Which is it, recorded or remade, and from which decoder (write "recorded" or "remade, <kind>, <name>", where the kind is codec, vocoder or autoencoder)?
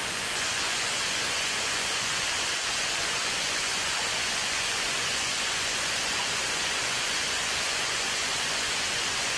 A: remade, vocoder, Vocos